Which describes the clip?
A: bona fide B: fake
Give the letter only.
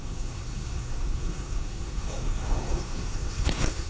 B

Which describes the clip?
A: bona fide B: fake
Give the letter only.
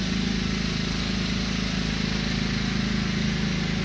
A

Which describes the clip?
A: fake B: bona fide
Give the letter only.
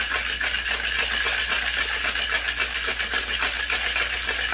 B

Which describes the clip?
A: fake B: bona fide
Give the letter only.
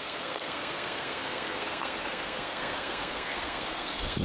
A